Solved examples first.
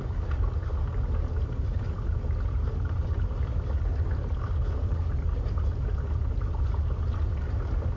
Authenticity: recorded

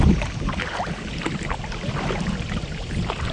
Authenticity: recorded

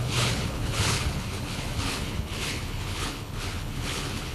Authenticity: remade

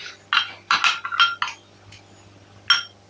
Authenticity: recorded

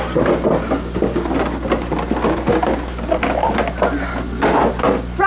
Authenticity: recorded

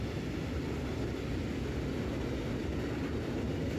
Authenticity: recorded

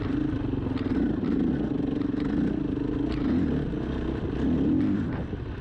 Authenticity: recorded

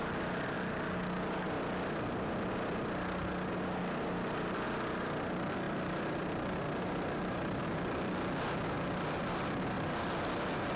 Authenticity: recorded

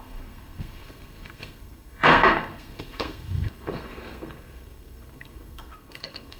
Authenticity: remade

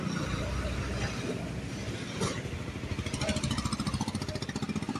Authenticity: recorded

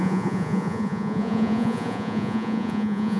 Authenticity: remade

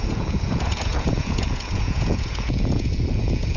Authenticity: remade